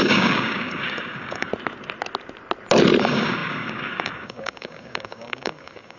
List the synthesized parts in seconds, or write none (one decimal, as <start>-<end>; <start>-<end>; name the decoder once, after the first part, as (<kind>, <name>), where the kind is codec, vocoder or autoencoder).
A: 0.0-1.5 (codec, DAC); 3.0-6.0